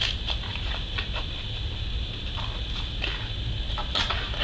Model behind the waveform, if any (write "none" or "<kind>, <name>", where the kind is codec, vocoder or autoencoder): none